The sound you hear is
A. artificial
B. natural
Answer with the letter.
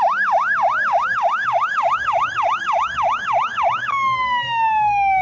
A